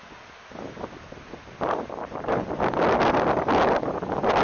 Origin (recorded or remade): recorded